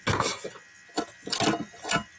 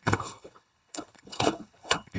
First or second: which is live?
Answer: first